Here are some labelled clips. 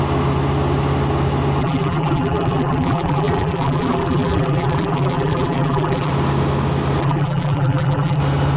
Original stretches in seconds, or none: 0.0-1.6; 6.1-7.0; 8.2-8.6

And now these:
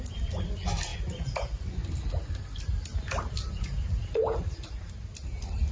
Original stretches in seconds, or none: 0.0-2.7; 4.5-5.7

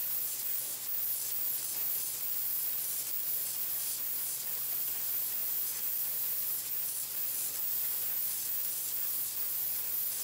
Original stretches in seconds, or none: 0.0-3.4; 3.9-5.4; 9.3-10.2

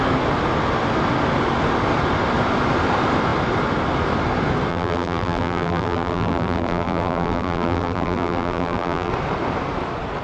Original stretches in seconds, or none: 0.0-4.7; 9.1-10.2